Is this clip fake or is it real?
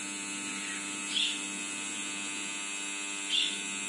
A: real